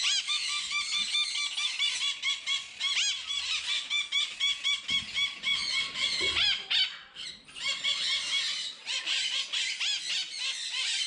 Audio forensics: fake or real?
real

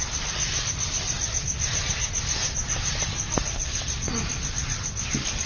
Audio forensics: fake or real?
real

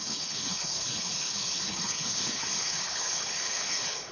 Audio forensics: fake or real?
fake